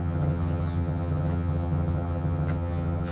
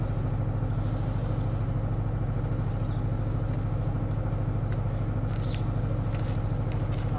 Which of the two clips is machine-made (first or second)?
first